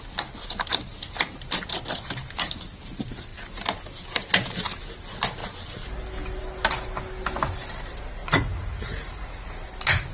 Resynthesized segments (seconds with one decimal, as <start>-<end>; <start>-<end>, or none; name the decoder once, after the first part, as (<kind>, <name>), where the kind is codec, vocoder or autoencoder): 8.2-9.6 (vocoder, Vocos)